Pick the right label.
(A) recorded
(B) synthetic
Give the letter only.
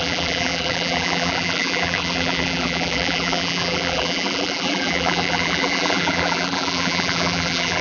B